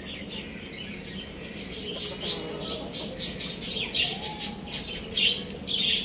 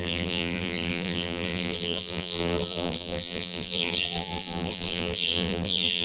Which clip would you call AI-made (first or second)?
second